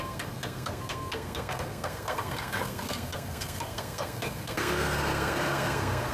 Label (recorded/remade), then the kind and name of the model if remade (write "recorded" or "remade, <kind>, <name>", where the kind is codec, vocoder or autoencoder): remade, codec, SNAC